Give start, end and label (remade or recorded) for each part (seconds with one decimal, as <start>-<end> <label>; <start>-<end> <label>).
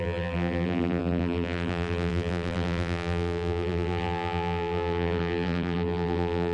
0.0-6.5 remade